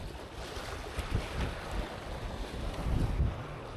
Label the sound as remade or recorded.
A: recorded